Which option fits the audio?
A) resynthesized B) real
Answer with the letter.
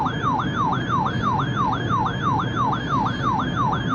B